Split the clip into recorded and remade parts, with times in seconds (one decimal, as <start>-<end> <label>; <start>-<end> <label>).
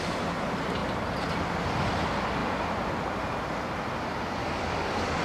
0.0-4.4 recorded; 4.4-5.2 remade